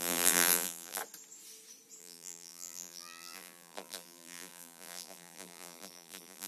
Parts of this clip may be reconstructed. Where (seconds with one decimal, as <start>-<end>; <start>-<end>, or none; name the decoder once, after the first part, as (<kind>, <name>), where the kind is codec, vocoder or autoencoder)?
0.0-1.0 (vocoder, BigVGAN v2); 2.0-6.5